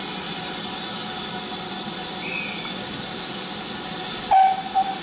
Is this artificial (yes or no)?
no